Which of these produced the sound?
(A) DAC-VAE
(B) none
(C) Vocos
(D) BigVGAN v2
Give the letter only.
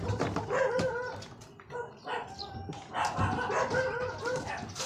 B